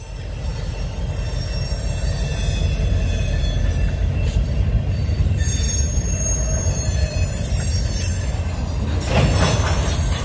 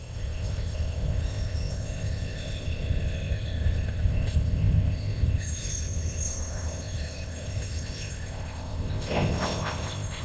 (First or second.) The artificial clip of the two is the second